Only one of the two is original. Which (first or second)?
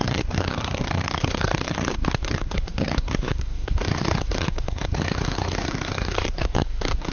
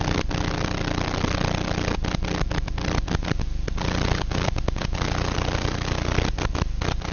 second